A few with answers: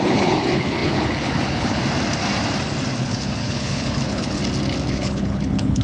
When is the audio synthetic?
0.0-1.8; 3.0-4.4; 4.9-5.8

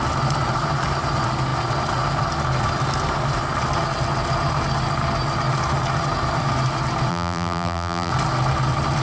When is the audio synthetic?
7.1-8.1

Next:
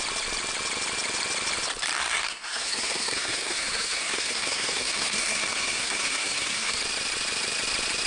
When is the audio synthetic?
2.0-6.8

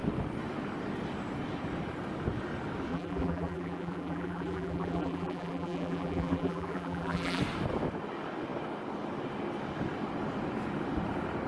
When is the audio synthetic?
2.9-7.4